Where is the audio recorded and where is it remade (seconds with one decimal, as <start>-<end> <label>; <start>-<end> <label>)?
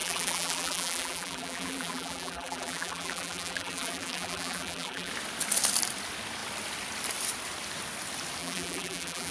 0.0-5.1 remade; 5.1-8.4 recorded; 8.4-9.3 remade